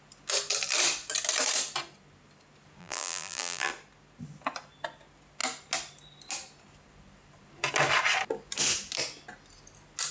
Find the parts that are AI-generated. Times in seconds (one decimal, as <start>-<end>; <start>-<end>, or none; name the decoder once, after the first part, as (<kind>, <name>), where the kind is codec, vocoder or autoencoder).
2.8-3.7 (vocoder, BigVGAN v2)